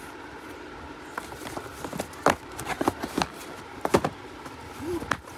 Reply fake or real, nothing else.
real